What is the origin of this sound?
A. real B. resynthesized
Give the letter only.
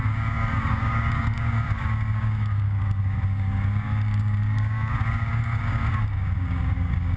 B